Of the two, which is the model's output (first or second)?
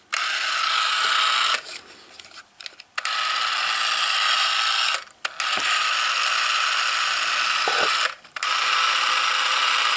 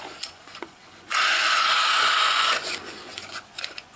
second